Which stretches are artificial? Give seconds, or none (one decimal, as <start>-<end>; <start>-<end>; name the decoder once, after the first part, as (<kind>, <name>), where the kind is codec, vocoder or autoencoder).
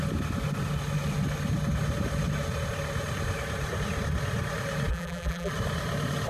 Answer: 4.9-5.5 (vocoder, BigVGAN v2)